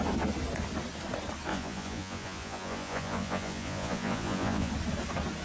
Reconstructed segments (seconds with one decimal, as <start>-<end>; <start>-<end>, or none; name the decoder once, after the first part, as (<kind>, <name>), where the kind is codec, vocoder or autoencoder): 1.5-4.7 (vocoder, Vocos)